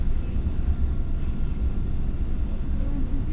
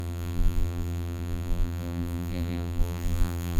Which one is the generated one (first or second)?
second